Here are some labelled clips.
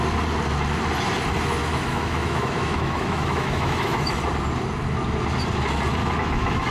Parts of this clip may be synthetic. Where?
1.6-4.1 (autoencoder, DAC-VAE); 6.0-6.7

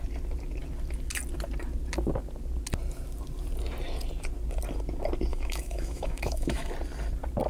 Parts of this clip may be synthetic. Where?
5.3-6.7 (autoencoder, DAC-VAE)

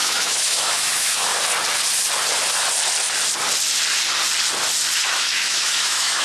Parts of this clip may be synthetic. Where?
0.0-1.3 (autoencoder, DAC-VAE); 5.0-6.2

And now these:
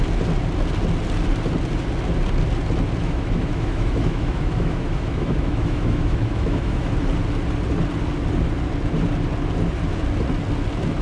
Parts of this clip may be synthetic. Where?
3.0-6.9 (autoencoder, DAC-VAE)

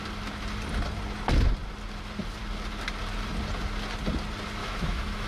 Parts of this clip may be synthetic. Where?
4.6-5.3 (autoencoder, DAC-VAE)

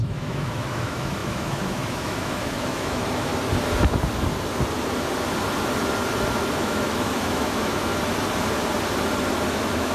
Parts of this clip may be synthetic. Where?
0.0-3.3 (autoencoder, DAC-VAE); 6.6-7.9; 9.5-9.9